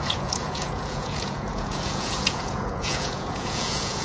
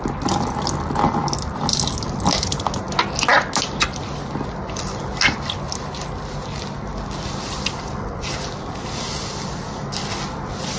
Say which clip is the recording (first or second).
second